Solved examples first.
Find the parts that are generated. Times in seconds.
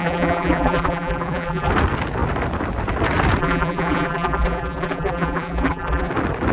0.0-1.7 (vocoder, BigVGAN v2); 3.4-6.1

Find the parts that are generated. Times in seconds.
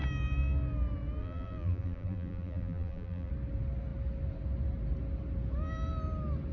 1.2-3.3 (vocoder, BigVGAN v2)